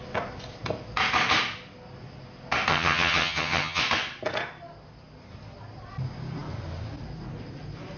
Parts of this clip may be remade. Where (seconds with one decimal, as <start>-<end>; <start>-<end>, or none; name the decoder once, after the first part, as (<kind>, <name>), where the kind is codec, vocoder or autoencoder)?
2.7-3.8 (vocoder, HiFi-GAN)